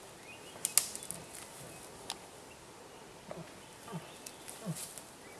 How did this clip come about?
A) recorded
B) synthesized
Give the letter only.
A